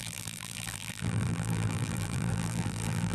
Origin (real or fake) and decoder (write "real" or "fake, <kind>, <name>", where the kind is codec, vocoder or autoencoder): fake, vocoder, BigVGAN v2